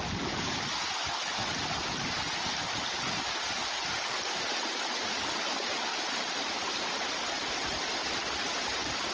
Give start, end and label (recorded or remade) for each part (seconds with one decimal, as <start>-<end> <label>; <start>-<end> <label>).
0.0-5.9 recorded; 5.9-6.7 remade; 6.7-9.1 recorded